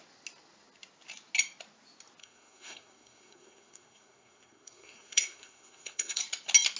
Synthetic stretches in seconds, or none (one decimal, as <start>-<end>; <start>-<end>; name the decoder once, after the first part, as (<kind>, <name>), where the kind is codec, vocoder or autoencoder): 2.2-6.2 (codec, SNAC)